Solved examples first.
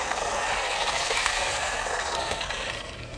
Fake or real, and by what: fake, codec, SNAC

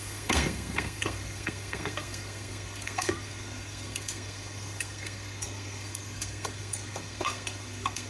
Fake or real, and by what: fake, codec, SNAC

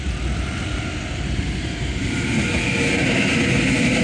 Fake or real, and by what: real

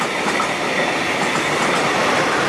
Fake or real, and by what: real